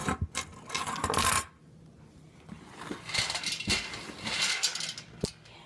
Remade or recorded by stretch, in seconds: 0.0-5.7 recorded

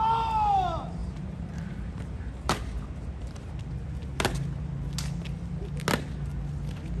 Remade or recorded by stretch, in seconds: 0.0-1.0 recorded; 1.0-3.5 remade; 3.5-7.0 recorded

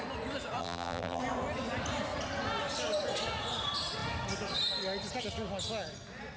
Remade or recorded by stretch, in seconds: 0.0-0.6 recorded; 0.6-1.2 remade; 1.2-6.4 recorded

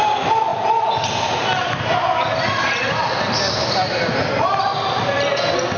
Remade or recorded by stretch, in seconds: 0.0-5.8 recorded